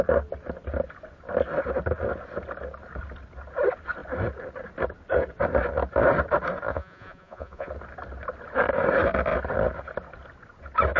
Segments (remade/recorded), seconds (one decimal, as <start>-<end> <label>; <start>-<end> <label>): 0.0-6.7 recorded; 6.7-7.7 remade; 7.7-11.0 recorded